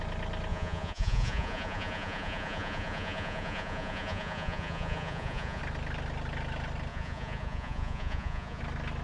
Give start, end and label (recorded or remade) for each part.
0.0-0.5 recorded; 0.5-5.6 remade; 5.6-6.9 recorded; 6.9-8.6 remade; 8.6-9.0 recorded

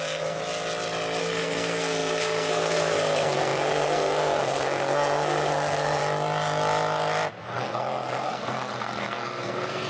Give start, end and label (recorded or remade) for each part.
0.0-0.4 remade; 0.4-1.2 recorded; 1.2-6.0 remade; 6.0-7.4 recorded; 7.4-9.9 remade

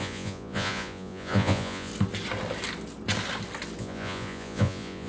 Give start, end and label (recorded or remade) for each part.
0.0-1.9 remade; 1.9-3.8 recorded; 3.8-5.1 remade

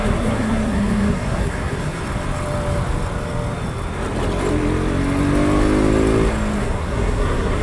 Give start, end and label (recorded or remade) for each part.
0.0-2.0 remade; 2.0-6.6 recorded; 6.6-7.6 remade

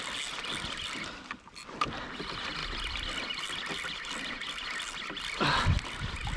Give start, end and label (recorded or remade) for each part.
0.0-6.4 recorded